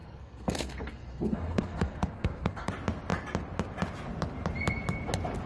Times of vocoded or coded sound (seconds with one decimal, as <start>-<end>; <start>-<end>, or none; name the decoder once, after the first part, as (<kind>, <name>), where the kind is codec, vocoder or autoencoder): 0.0-2.7 (codec, SNAC)